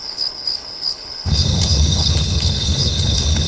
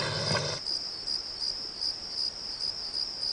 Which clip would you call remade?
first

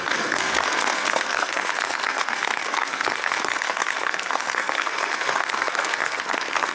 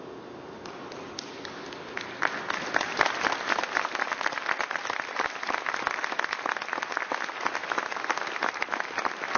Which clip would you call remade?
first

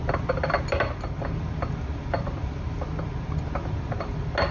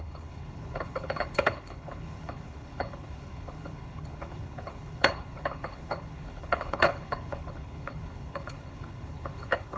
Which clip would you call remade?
second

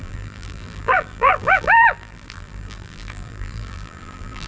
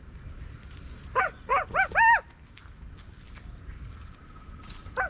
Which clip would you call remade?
first